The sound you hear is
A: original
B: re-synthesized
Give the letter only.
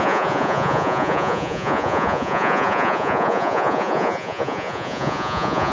B